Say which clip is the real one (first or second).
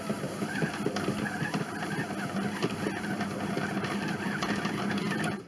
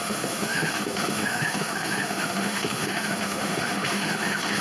first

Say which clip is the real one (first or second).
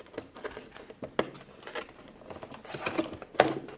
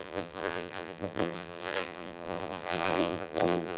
first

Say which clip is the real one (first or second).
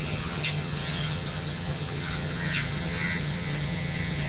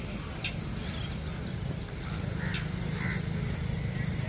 second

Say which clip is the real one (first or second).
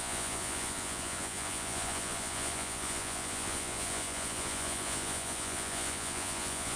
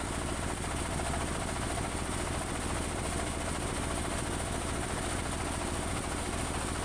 second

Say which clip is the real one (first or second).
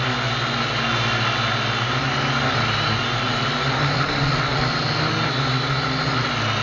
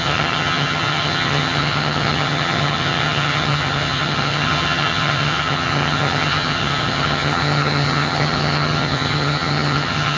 first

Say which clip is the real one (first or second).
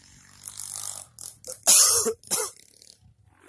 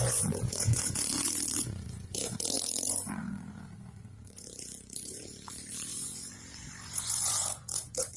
first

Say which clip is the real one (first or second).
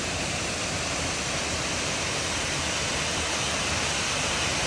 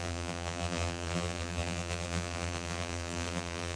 first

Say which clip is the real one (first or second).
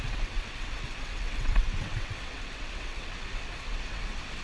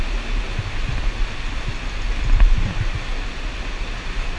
second